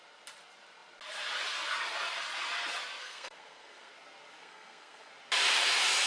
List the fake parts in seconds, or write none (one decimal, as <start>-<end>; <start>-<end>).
3.0-3.9; 4.4-5.1